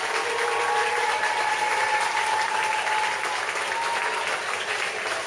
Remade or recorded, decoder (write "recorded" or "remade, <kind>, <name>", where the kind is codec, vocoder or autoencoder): recorded